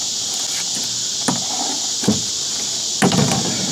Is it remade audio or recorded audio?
recorded